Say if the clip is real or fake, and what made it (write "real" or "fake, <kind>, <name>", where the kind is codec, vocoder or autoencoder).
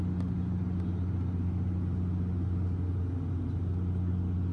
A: real